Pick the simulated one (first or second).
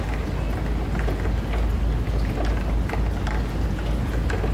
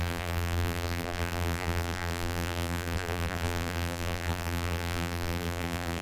second